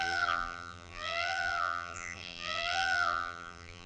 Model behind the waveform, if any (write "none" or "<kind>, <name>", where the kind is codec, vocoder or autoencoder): vocoder, BigVGAN v2